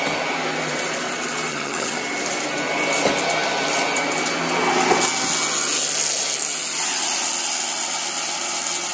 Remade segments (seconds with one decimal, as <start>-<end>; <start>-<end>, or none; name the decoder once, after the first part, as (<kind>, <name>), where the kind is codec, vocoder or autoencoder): 1.5-2.0 (vocoder, HiFi-GAN)